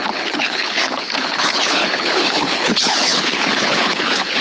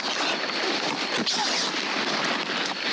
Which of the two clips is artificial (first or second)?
first